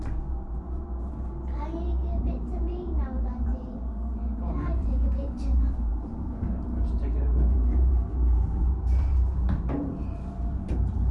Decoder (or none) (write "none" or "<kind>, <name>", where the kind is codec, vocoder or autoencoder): vocoder, BigVGAN v2